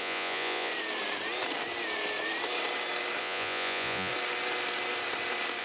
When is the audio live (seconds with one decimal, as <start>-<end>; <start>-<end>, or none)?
0.7-3.2; 4.1-5.6